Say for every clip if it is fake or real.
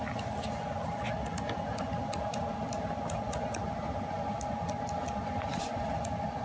real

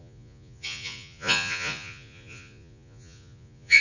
fake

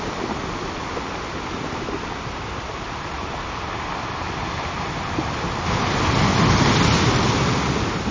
real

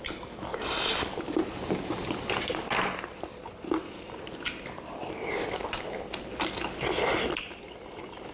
real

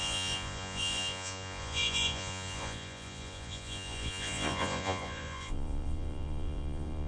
fake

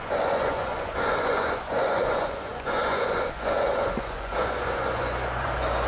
fake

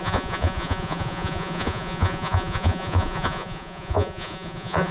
fake